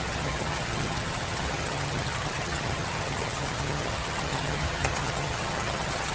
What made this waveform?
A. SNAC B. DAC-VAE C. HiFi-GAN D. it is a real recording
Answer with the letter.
C